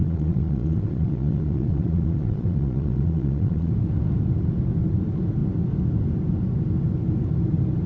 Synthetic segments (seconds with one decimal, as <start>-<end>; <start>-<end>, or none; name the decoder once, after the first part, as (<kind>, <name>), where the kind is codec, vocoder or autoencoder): 0.0-3.7 (vocoder, Vocos)